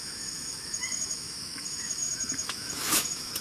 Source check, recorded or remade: remade